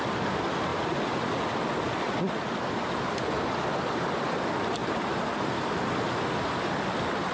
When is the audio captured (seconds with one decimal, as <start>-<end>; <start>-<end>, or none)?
0.7-3.8; 4.8-6.4

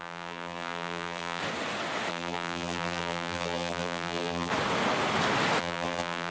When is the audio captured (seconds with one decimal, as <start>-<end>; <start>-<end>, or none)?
1.4-2.1; 4.5-5.6

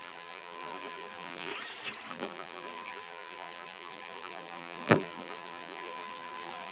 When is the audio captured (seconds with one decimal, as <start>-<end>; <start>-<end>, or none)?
1.5-2.1

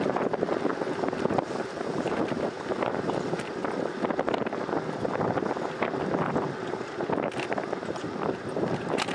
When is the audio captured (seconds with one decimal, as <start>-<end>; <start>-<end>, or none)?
0.7-1.4; 3.6-7.8

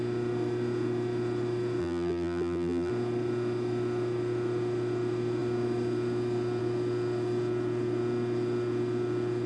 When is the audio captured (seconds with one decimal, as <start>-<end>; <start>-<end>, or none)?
0.0-1.8; 2.9-9.5